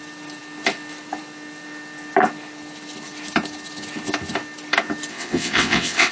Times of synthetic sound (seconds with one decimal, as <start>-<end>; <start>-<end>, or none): 5.1-6.1